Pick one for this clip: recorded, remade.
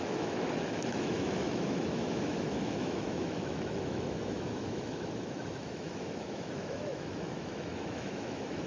remade